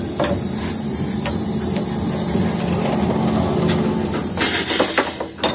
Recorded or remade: recorded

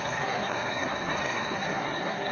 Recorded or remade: remade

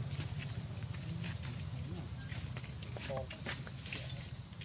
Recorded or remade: recorded